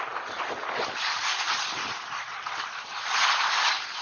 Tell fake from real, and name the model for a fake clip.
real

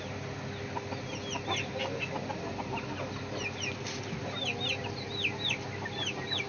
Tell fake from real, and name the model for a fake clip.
real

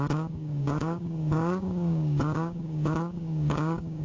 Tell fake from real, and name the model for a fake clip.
fake, codec, DAC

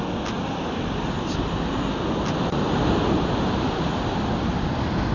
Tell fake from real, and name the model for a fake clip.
real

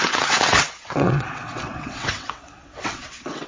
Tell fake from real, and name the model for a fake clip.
fake, vocoder, WaveNeXt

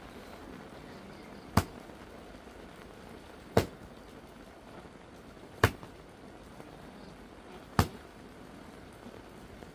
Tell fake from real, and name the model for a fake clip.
real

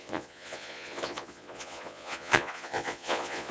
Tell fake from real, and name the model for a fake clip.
fake, vocoder, Vocos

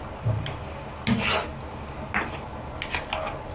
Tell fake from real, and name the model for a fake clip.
real